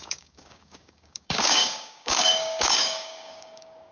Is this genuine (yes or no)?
no